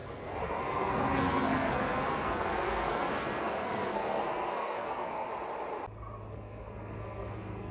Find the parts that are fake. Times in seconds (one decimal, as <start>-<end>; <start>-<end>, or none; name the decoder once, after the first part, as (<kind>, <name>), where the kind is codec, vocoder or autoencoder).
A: 0.0-5.3 (codec, SNAC); 6.3-7.7